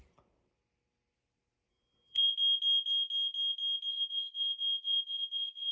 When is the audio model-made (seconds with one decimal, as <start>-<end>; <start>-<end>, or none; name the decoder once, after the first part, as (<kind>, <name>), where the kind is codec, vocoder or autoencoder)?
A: 1.7-2.3 (codec, SNAC); 3.9-5.7